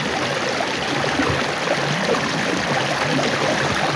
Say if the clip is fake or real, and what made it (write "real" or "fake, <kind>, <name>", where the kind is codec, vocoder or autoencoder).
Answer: real